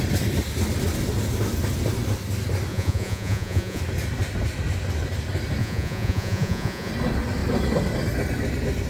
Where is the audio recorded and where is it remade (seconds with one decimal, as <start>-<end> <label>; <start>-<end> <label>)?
0.0-2.7 recorded; 2.7-3.8 remade; 3.8-5.6 recorded; 5.6-6.9 remade; 6.9-8.9 recorded